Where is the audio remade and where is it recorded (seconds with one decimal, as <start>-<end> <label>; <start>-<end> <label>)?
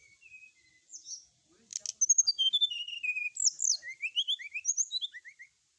0.0-5.8 recorded